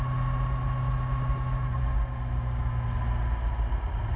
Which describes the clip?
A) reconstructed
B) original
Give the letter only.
B